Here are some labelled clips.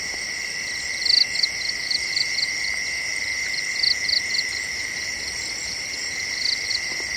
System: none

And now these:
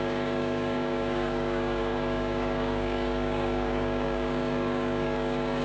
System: codec, DAC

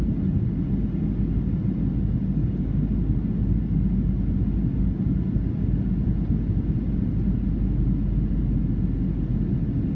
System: none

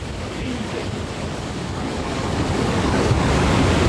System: codec, DAC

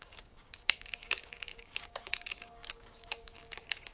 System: codec, DAC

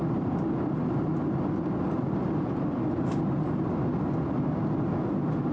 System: none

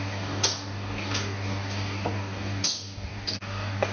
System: codec, DAC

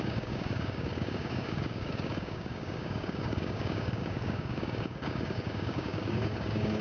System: codec, DAC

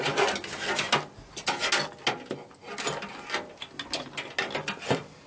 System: none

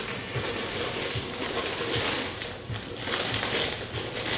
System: none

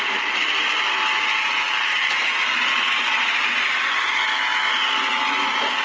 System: none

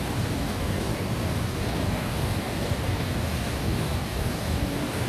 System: codec, DAC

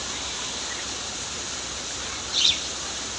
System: none